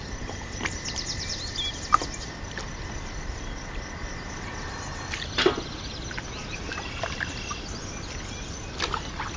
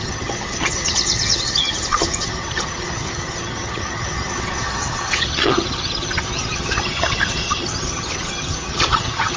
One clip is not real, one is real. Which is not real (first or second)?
second